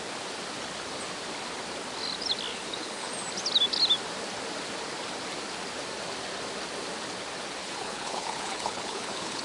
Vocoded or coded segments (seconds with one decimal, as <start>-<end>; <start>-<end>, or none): 2.5-3.1; 7.6-9.4